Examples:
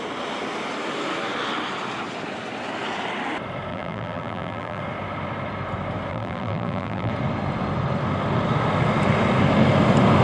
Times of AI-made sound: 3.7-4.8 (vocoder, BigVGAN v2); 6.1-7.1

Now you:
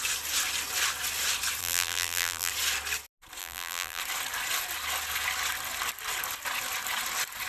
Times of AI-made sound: 1.6-2.5 (vocoder, BigVGAN v2); 3.4-4.0

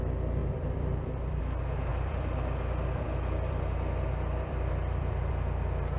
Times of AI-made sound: 0.4-1.4 (vocoder, BigVGAN v2); 1.9-5.3